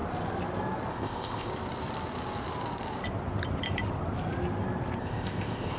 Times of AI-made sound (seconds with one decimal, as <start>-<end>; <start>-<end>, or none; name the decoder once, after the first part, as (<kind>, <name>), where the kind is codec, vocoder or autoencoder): 0.9-1.5 (codec, ZipCodec); 5.0-5.8